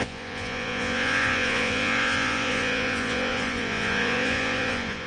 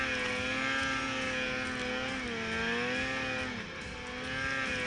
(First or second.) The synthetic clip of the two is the first